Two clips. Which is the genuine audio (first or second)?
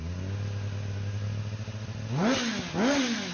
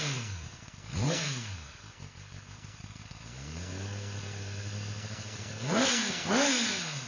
first